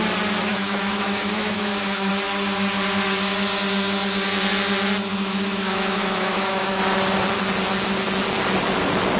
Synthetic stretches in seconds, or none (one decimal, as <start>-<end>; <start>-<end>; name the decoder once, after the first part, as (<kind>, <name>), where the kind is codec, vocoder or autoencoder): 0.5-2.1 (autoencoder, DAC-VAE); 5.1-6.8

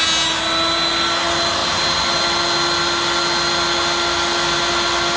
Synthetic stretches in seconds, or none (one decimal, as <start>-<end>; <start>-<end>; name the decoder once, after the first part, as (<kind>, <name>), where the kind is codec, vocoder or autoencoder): none

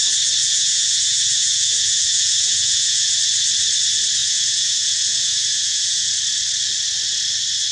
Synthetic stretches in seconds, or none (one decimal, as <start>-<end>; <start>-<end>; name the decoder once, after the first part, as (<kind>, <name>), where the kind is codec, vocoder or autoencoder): 0.4-3.2 (vocoder, Vocos); 4.2-6.1

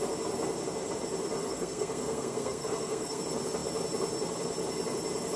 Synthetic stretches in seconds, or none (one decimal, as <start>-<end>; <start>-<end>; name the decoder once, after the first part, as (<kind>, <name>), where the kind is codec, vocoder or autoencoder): 1.4-3.2 (codec, SNAC)